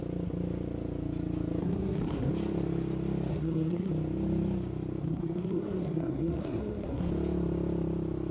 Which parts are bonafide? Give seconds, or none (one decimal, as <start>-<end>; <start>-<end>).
0.0-1.6; 2.3-3.3; 3.9-5.0; 7.1-8.3